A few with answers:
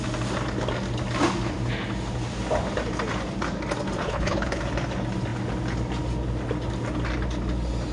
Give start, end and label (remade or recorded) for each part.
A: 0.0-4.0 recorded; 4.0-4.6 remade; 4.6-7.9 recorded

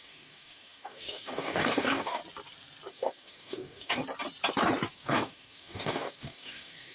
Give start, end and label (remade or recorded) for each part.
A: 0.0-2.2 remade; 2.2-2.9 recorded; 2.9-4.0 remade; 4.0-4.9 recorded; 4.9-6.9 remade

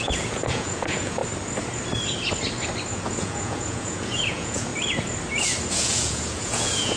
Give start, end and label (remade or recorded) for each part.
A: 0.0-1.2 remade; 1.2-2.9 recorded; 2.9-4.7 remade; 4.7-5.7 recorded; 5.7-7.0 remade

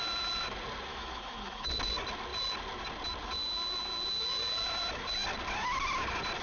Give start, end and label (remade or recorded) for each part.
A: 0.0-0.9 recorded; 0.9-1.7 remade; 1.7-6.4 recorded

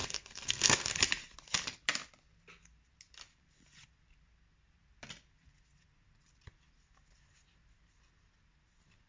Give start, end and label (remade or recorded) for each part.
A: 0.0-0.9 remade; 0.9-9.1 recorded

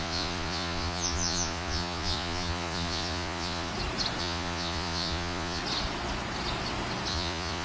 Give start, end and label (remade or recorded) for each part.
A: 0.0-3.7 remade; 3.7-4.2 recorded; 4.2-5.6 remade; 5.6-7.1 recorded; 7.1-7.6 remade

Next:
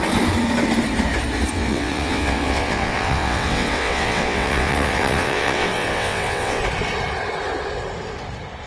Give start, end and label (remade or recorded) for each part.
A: 0.0-1.5 recorded; 1.5-6.6 remade; 6.6-8.7 recorded